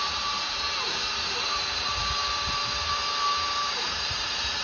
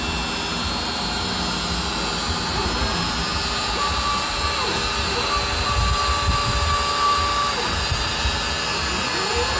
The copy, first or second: first